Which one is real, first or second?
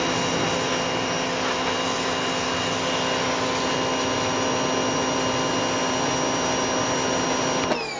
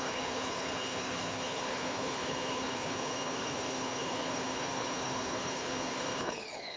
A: first